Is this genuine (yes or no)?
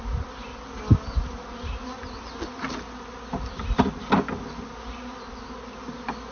yes